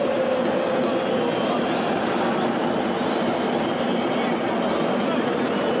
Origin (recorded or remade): recorded